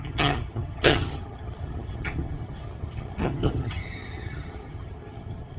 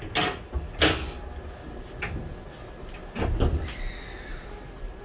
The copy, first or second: first